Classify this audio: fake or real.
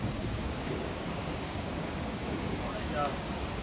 fake